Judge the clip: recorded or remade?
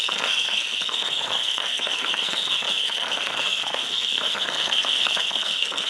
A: remade